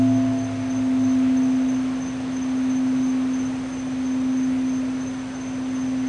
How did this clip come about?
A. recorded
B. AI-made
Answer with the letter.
A